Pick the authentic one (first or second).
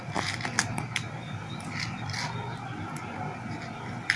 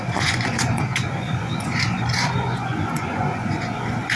first